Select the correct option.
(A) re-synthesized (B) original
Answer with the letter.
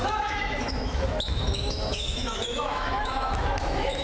A